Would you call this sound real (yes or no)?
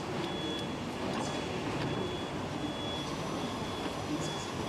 yes